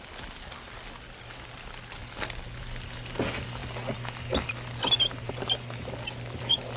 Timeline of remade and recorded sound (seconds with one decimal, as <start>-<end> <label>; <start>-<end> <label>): 0.0-6.8 recorded